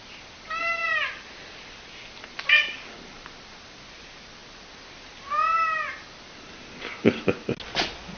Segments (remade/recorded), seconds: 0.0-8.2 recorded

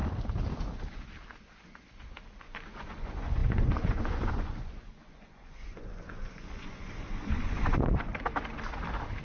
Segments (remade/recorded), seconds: 0.0-2.4 recorded; 2.4-8.1 remade; 8.1-9.2 recorded

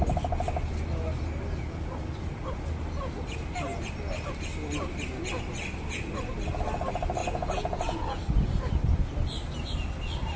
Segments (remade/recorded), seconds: 0.0-7.2 recorded; 7.2-8.2 remade; 8.2-10.4 recorded

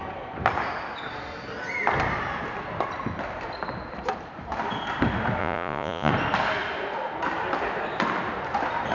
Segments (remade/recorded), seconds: 0.0-5.4 recorded; 5.4-6.1 remade; 6.1-8.9 recorded

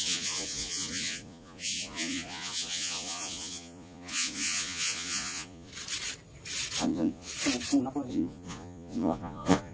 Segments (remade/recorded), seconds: 0.0-5.7 remade; 5.7-6.8 recorded; 6.8-7.3 remade; 7.3-8.1 recorded; 8.1-9.7 remade

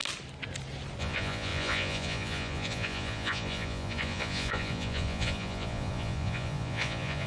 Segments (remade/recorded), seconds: 0.0-1.0 recorded; 1.0-7.3 remade

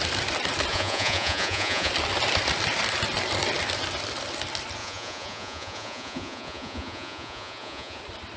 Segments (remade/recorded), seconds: 0.0-0.7 recorded; 0.7-1.9 remade; 1.9-4.8 recorded; 4.8-8.0 remade; 8.0-8.4 recorded

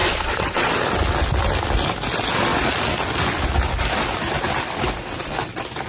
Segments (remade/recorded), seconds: 0.0-0.7 remade; 0.7-5.9 recorded